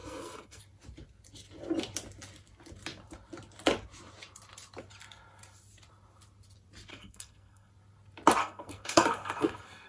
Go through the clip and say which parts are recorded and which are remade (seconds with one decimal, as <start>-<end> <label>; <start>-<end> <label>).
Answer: 0.0-0.6 remade; 0.6-6.9 recorded; 6.9-7.7 remade; 7.7-8.4 recorded; 8.4-9.9 remade